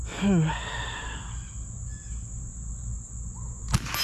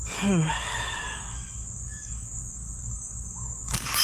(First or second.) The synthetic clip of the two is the second